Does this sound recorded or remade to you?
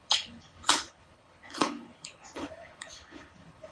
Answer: remade